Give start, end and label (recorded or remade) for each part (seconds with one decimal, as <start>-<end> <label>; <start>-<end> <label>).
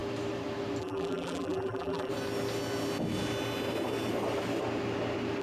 0.0-0.8 recorded; 0.8-2.1 remade; 2.1-5.4 recorded